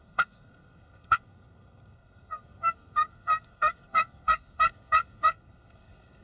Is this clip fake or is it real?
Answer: fake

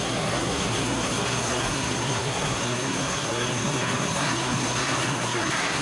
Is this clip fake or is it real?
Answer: fake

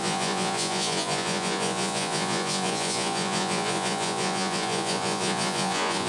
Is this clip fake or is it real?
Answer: fake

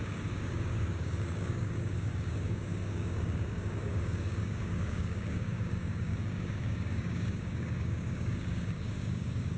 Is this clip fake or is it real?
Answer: fake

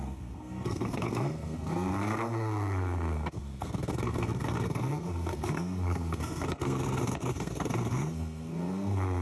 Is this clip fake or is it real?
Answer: fake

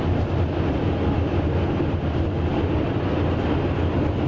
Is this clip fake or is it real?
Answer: real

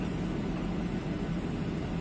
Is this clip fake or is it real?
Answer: real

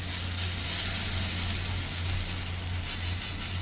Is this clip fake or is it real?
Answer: real